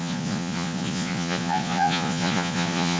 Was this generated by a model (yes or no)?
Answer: yes